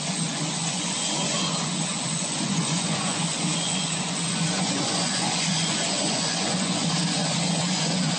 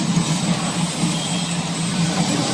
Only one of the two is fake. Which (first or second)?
first